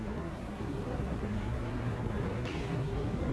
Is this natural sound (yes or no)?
no